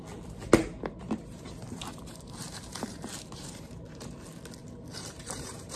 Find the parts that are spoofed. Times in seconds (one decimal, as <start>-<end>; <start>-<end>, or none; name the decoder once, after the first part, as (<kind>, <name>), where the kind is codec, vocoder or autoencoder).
0.6-4.1 (vocoder, BigVGAN v2); 4.6-5.8